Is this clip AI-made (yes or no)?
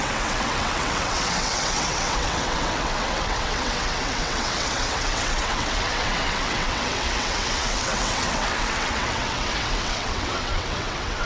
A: yes